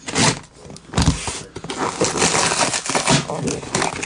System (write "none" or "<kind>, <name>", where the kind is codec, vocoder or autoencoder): none